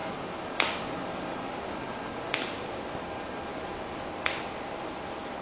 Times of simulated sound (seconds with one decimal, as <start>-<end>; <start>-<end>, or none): none